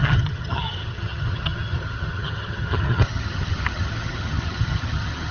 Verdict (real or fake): fake